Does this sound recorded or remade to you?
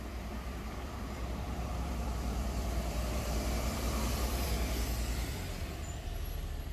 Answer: remade